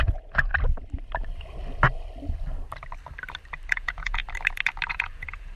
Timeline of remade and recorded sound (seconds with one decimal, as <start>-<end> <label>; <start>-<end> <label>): 0.0-0.5 remade; 0.5-3.7 recorded; 3.7-4.2 remade; 4.2-4.9 recorded; 4.9-5.6 remade